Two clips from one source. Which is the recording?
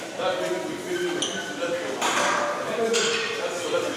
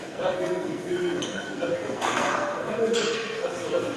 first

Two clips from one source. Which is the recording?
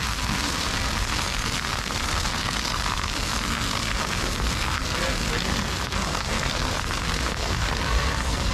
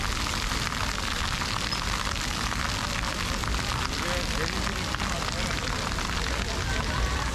second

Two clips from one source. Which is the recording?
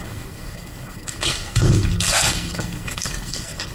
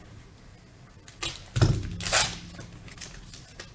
second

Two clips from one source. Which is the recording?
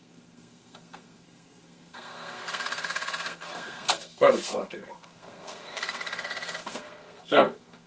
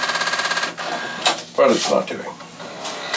second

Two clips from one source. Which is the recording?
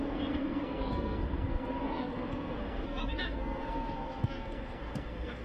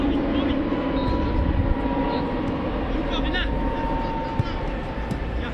second